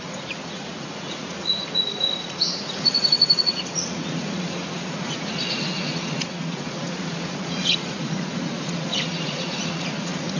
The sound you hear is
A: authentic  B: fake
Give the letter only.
B